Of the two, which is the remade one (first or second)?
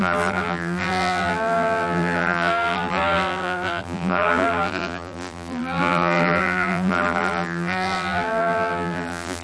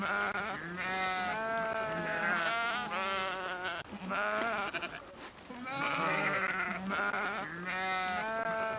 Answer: first